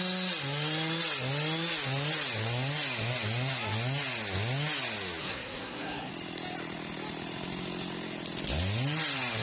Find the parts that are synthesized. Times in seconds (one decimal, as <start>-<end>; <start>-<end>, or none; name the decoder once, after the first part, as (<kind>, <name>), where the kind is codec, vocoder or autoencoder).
5.2-6.1 (codec, SNAC)